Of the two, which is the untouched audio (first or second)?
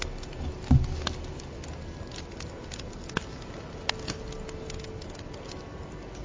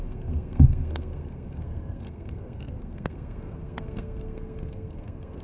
first